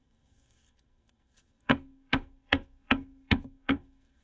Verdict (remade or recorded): remade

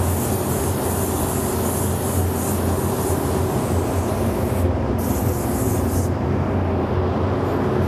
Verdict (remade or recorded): recorded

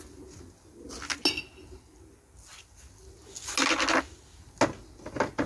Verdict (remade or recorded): recorded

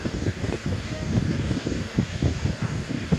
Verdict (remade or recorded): remade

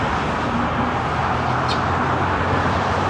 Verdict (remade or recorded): recorded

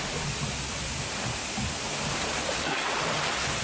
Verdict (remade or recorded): recorded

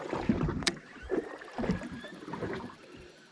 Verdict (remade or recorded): remade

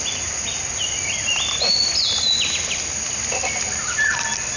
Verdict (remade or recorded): recorded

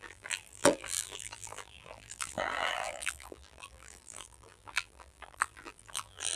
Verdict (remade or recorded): remade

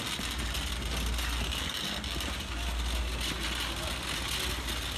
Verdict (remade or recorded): recorded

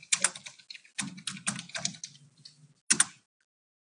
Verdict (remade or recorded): recorded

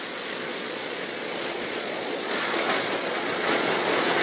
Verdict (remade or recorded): remade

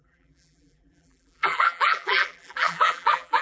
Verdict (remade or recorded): remade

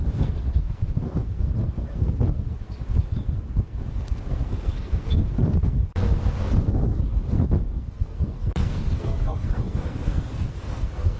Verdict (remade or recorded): remade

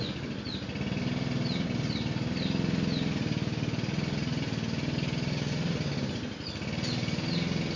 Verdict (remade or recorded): recorded